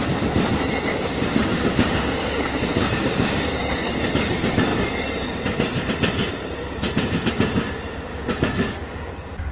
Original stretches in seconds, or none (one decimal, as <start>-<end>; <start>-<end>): 0.0-0.9; 4.1-8.1; 9.1-9.5